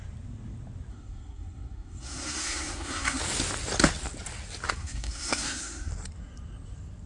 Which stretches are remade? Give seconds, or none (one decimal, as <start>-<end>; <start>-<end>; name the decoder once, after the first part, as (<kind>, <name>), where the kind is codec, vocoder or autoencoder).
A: 0.9-3.2 (codec, SNAC); 4.8-5.9

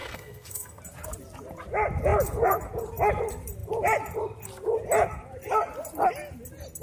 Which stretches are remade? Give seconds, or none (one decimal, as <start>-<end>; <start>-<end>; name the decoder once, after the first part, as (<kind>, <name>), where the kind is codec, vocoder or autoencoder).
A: 0.0-0.8 (codec, SNAC)

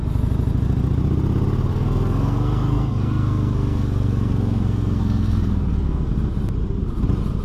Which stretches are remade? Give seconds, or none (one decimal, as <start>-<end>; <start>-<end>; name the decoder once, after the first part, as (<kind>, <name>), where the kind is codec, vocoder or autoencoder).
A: 1.7-6.1 (codec, SNAC)

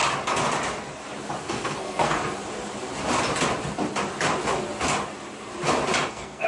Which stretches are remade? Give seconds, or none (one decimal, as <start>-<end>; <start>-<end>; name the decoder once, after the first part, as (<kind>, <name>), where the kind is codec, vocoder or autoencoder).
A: 1.4-2.2 (codec, SNAC); 6.1-6.5

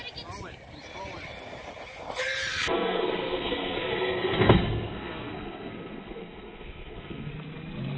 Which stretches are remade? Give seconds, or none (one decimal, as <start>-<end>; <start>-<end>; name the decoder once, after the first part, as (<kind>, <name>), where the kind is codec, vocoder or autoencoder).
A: 2.5-7.3 (codec, SNAC)

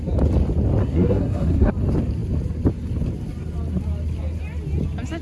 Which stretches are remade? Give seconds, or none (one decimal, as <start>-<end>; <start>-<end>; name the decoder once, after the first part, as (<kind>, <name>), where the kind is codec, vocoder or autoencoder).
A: 0.8-1.7 (codec, SNAC)